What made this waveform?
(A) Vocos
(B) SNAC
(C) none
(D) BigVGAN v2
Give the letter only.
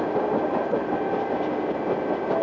C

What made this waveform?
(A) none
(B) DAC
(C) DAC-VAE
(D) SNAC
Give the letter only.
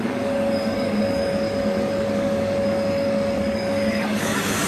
B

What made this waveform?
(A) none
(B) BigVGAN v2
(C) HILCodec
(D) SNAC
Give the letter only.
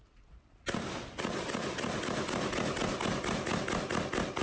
A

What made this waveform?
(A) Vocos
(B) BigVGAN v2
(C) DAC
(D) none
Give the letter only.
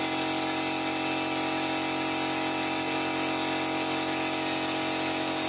D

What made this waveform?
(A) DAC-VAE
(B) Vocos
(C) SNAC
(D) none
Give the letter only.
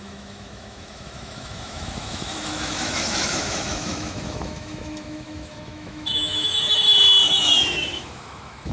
A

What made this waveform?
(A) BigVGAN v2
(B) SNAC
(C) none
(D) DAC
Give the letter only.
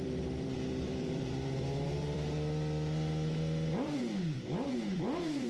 A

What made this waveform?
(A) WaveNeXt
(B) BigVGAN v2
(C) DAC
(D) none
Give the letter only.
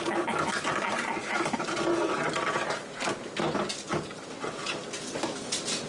D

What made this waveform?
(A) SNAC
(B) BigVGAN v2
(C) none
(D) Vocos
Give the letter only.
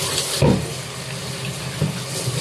C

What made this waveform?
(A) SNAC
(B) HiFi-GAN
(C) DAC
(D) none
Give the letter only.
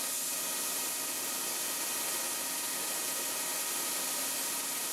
D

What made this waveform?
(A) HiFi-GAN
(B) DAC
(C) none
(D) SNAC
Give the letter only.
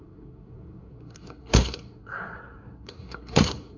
D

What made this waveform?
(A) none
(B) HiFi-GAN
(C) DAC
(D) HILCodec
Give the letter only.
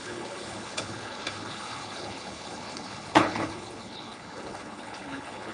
D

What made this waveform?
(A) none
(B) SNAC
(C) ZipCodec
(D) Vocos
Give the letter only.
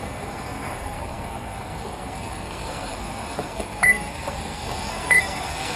B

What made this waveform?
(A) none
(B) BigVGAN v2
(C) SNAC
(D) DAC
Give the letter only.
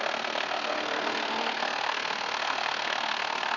C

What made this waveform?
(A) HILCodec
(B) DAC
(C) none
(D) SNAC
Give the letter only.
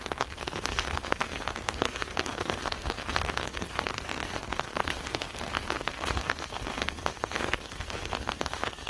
D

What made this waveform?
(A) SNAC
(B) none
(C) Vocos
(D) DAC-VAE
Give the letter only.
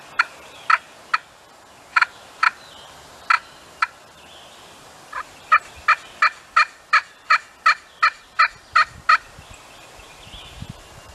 B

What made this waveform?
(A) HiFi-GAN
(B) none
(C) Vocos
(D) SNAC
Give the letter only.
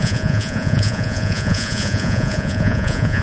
C